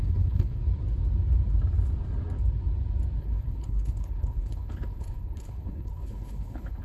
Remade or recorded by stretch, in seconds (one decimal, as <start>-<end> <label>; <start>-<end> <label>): 0.0-0.6 remade; 0.6-3.2 recorded; 3.2-6.8 remade